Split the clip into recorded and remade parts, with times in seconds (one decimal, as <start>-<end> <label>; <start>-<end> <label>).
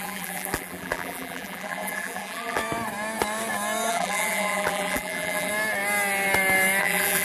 0.0-2.6 remade; 2.6-3.9 recorded; 3.9-5.5 remade; 5.5-6.8 recorded; 6.8-7.2 remade